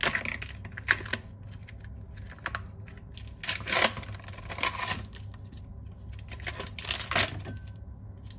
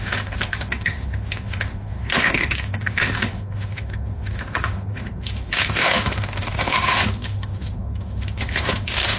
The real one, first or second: first